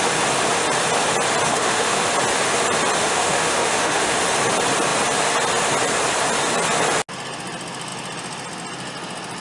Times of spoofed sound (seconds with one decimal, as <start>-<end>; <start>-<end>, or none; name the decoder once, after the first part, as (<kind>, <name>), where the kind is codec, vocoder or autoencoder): 1.5-2.0 (autoencoder, DAC-VAE); 3.0-4.2